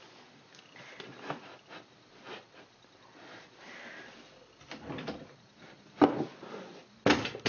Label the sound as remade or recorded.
recorded